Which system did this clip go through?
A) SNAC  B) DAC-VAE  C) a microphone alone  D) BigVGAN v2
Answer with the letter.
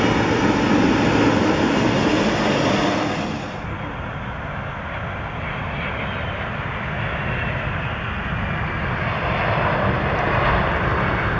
C